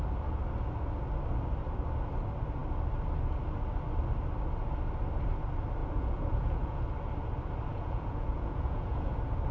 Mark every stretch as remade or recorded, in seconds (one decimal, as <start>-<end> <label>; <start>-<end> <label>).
0.0-5.8 recorded; 5.8-6.8 remade; 6.8-7.7 recorded; 7.7-9.1 remade; 9.1-9.5 recorded